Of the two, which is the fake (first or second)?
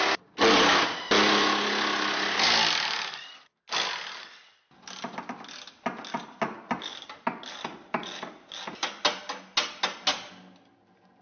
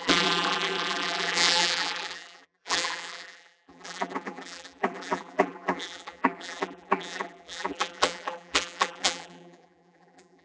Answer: second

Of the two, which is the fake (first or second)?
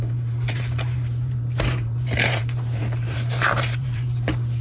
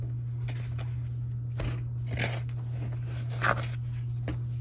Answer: first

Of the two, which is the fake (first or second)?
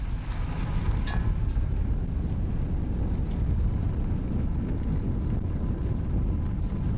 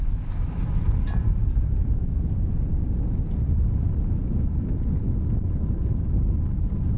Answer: second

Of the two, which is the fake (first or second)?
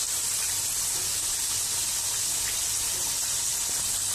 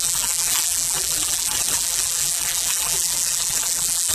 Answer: second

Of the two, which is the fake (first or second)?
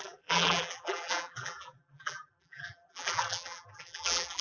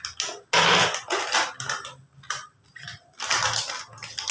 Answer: first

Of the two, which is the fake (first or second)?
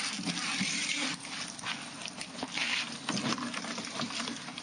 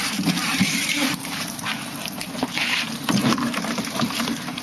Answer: second